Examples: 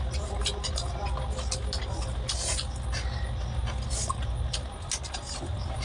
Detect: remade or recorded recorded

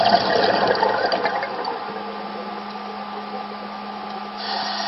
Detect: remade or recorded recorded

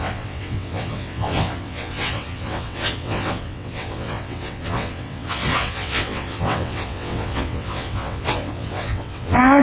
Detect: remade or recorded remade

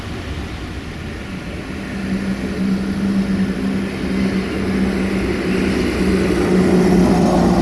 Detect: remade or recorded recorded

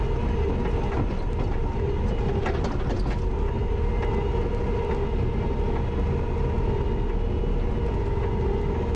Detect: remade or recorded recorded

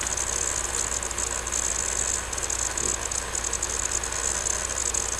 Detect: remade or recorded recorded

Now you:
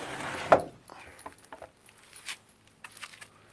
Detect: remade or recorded recorded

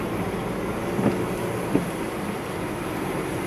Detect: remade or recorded recorded